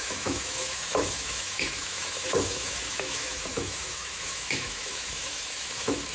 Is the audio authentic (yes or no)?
no